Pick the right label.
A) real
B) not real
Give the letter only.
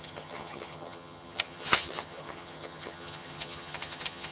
B